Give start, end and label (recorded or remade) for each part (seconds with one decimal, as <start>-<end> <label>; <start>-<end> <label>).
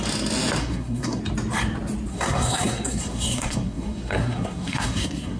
0.0-0.6 recorded; 0.6-1.2 remade; 1.2-2.1 recorded; 2.1-5.4 remade